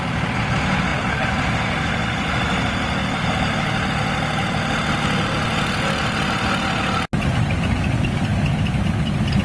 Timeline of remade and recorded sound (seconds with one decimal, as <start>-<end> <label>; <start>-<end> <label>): 0.0-9.4 recorded